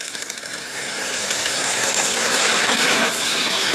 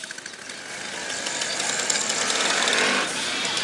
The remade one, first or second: first